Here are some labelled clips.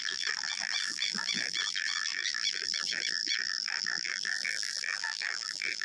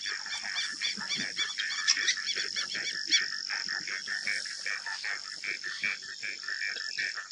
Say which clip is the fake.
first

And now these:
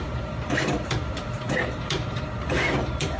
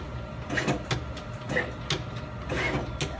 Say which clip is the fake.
first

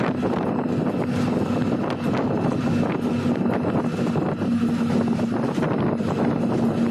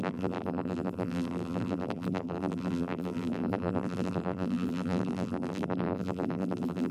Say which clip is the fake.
second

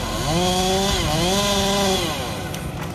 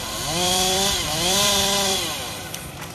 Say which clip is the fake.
second